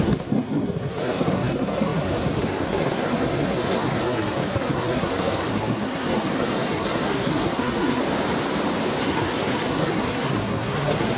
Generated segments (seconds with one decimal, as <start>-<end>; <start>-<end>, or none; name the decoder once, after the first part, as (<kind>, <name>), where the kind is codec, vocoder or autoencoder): 0.0-8.0 (codec, SNAC); 9.0-11.2